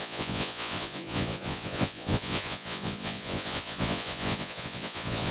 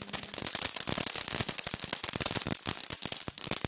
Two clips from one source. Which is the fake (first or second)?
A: first